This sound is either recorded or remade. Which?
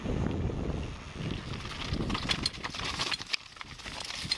recorded